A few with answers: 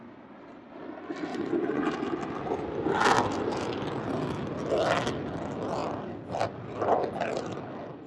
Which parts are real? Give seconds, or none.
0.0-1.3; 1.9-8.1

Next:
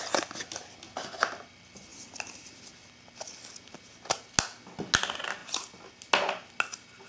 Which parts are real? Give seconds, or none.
0.0-7.1

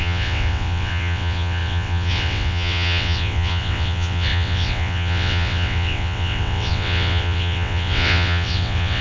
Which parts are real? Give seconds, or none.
none